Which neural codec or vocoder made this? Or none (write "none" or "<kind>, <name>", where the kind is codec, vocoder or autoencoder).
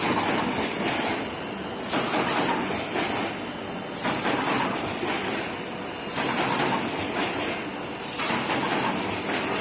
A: none